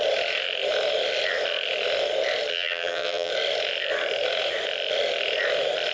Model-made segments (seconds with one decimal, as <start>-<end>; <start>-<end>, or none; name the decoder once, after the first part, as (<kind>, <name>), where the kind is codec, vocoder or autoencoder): 2.5-3.3 (vocoder, HiFi-GAN)